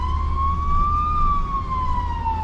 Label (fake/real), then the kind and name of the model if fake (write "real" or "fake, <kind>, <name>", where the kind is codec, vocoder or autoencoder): real